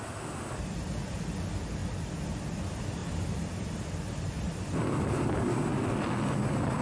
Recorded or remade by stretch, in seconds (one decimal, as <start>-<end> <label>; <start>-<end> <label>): 0.0-6.8 recorded